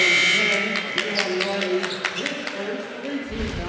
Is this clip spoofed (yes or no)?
no